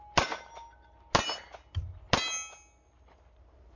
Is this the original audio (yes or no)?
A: yes